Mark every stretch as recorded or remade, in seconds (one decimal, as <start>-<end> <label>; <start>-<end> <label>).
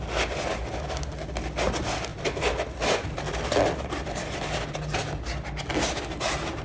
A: 0.0-6.6 recorded